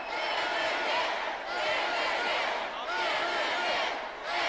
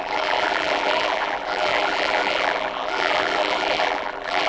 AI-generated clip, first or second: second